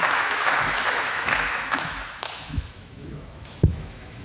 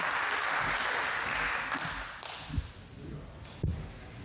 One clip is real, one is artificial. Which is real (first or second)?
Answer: second